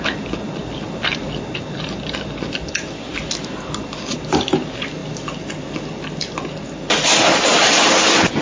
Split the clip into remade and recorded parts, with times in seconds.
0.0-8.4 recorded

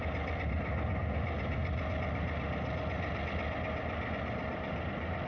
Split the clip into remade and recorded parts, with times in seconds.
0.0-5.3 recorded

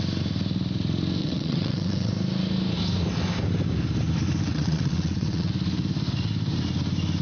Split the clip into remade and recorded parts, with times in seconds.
0.0-1.2 recorded; 1.2-2.1 remade; 2.1-4.5 recorded; 4.5-5.5 remade; 5.5-7.2 recorded